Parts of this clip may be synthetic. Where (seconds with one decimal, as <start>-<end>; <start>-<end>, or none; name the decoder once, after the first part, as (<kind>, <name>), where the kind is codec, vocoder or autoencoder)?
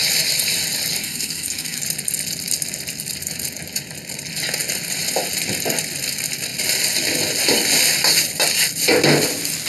1.0-1.8 (codec, SNAC)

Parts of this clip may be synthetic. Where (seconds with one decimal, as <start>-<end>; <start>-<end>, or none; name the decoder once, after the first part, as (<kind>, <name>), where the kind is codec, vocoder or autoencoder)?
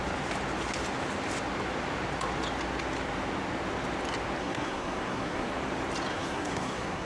4.4-5.5 (codec, SNAC); 6.1-7.1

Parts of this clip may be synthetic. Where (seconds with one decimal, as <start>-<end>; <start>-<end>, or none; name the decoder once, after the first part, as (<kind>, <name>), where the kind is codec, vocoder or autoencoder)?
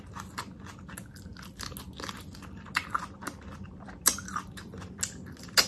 none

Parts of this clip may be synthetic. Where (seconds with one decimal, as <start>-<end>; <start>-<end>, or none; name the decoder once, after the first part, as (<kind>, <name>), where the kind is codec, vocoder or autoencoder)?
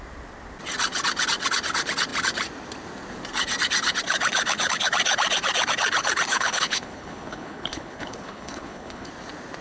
6.3-9.1 (codec, HILCodec)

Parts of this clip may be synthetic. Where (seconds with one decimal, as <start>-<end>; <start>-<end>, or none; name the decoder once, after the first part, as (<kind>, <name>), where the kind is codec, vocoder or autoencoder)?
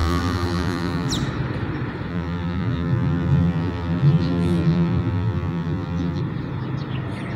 0.0-1.1 (vocoder, BigVGAN v2); 2.1-6.2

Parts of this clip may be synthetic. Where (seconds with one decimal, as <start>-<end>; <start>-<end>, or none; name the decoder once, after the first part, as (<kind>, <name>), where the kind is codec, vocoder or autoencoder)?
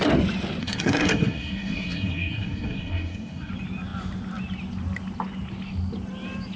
0.6-3.5 (codec, SNAC)